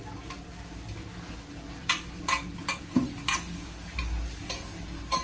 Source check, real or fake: real